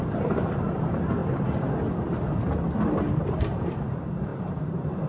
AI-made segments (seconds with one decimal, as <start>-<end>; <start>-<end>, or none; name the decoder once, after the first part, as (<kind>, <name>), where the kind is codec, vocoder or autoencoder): 0.0-1.2 (vocoder, BigVGAN v2); 3.2-5.1